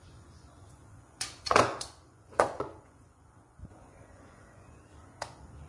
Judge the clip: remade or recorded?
remade